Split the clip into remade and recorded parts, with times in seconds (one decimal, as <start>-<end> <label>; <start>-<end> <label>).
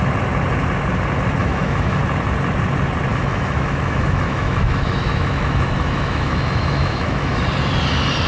0.0-1.4 recorded; 1.4-2.0 remade; 2.0-3.1 recorded; 3.1-7.4 remade; 7.4-8.3 recorded